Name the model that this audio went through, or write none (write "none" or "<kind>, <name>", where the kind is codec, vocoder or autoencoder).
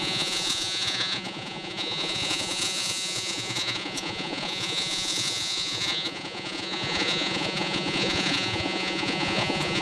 vocoder, Vocos